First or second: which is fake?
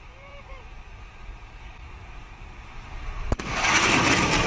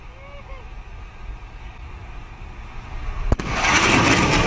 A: first